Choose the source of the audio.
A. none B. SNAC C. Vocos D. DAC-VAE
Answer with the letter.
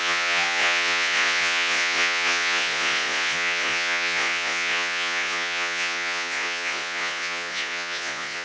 C